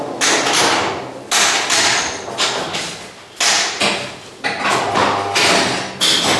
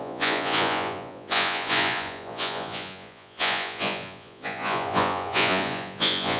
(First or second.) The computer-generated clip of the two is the second